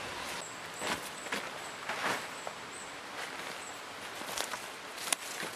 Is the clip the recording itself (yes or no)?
yes